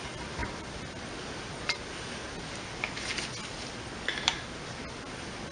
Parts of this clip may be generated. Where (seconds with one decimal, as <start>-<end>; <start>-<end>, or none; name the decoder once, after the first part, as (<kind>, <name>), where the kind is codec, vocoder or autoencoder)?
none